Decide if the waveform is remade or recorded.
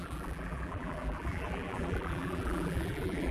remade